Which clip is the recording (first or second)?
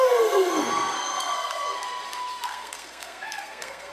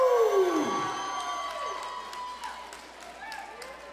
second